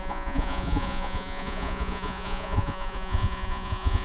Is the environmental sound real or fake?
fake